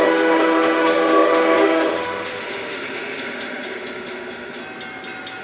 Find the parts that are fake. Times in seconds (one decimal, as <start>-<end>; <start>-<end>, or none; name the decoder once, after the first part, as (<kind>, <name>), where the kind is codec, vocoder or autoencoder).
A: 0.0-4.6 (autoencoder, DAC-VAE)